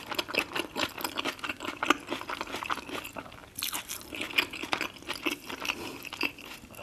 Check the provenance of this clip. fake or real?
real